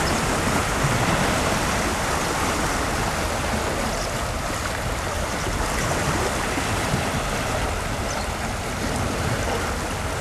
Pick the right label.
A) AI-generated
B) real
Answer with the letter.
B